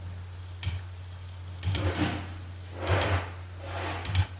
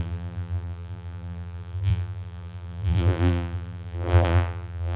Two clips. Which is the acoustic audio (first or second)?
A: first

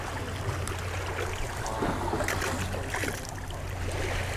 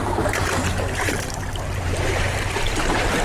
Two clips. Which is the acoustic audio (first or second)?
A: first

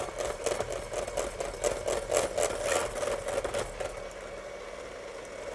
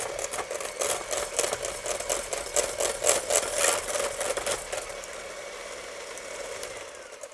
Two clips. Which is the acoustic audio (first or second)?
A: first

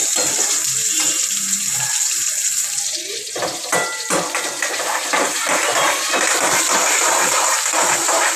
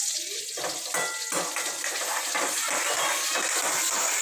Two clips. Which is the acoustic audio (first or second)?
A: second